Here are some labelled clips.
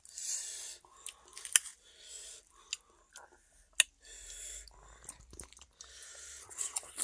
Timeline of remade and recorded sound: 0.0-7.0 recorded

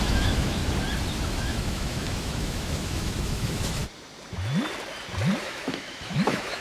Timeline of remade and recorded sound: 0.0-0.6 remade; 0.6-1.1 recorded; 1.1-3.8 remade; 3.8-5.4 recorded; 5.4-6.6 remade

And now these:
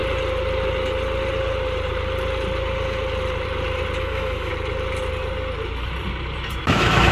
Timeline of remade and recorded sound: 0.0-4.0 recorded; 4.0-4.5 remade; 4.5-6.6 recorded; 6.6-7.1 remade

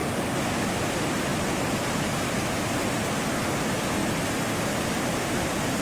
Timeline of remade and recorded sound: 0.0-5.8 recorded

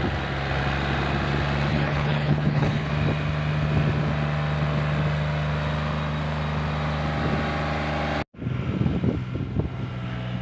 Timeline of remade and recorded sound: 0.0-1.7 recorded; 1.7-2.9 remade; 2.9-10.4 recorded